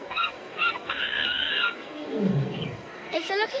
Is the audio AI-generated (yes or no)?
yes